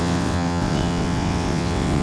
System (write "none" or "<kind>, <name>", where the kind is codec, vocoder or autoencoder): vocoder, WaveNeXt